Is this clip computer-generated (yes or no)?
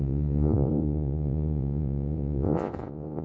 yes